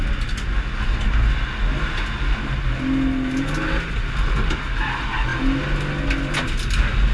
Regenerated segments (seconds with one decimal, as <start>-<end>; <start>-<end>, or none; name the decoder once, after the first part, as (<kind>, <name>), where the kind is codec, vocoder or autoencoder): none